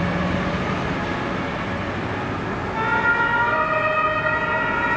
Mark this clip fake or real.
real